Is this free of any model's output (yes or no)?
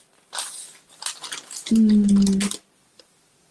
yes